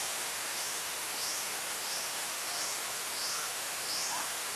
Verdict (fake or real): fake